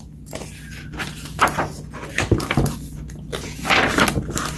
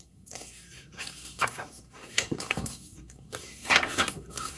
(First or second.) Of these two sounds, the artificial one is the second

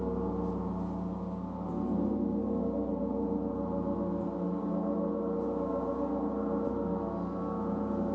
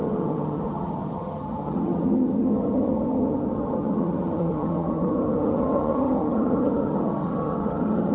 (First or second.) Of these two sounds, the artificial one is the second